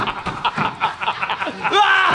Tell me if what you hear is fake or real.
real